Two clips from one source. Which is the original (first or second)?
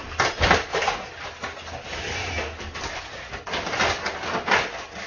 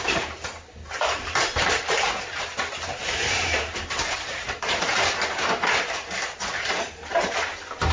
first